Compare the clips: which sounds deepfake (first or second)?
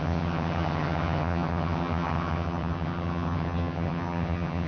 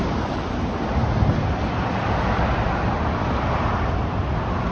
first